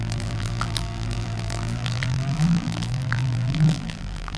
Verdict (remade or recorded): remade